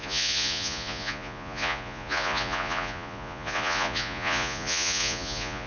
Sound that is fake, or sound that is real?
fake